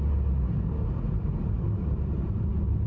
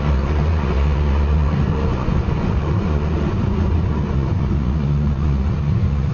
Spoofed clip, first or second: second